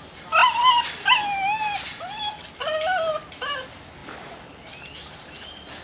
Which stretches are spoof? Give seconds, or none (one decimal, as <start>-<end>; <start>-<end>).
none